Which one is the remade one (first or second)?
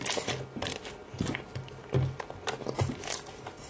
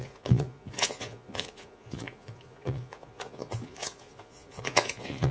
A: second